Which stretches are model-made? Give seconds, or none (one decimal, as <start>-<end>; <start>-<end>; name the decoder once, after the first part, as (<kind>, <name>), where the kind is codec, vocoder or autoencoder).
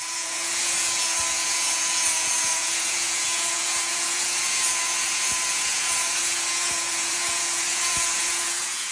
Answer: 0.0-8.9 (vocoder, Vocos)